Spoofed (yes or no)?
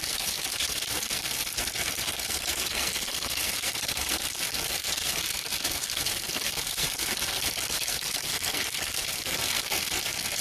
yes